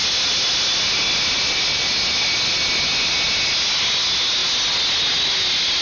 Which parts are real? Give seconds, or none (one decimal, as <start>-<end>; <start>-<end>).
0.0-5.8